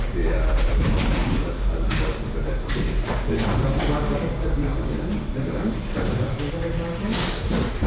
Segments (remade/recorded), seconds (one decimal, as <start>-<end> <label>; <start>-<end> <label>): 0.0-4.7 remade; 4.7-5.3 recorded; 5.3-7.9 remade